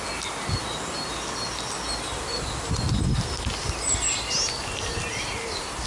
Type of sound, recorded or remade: recorded